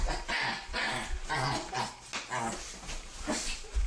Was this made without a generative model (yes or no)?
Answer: yes